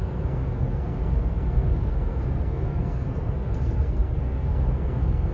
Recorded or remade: remade